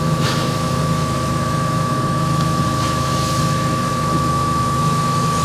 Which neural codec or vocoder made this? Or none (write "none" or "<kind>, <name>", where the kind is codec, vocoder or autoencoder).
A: autoencoder, DAC-VAE